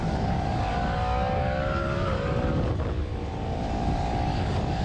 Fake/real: fake